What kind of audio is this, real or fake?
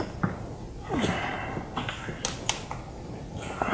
real